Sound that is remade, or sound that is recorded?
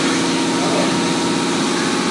recorded